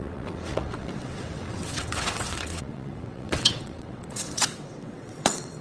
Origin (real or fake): fake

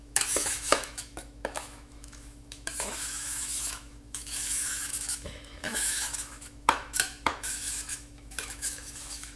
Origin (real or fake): fake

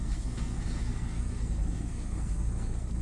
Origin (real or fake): fake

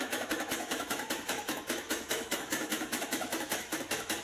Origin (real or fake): fake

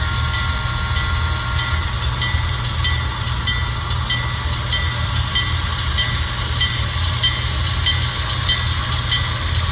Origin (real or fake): real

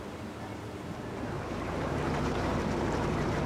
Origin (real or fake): real